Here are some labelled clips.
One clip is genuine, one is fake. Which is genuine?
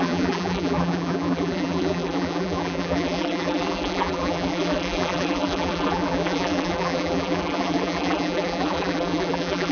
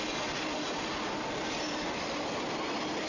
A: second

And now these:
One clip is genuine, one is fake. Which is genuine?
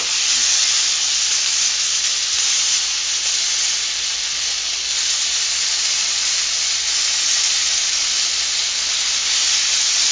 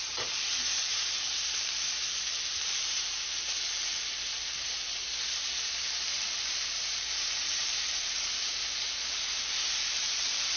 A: first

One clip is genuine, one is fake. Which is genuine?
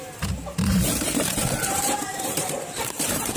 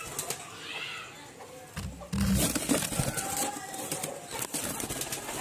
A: second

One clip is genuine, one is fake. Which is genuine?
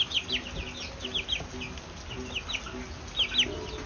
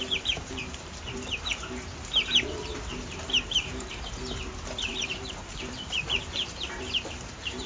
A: first